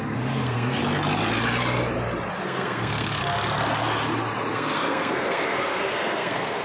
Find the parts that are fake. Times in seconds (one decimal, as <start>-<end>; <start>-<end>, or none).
0.0-0.8; 2.4-3.2; 4.5-6.6